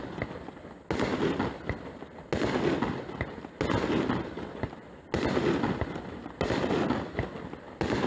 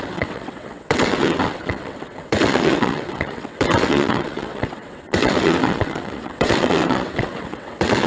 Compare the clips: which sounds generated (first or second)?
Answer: second